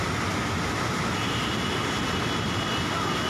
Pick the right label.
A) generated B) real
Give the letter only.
B